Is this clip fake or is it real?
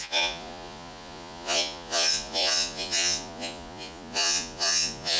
fake